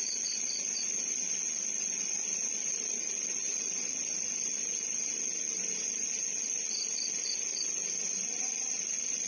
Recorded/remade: recorded